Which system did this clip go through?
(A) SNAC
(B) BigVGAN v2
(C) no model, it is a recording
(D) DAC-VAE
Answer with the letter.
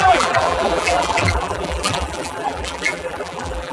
B